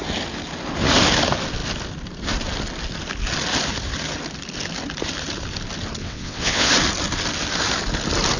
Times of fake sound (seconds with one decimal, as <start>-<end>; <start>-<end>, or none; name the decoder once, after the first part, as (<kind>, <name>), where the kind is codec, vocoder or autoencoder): 6.0-6.7 (vocoder, WaveNeXt)